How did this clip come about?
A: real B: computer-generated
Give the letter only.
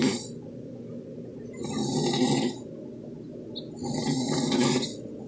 A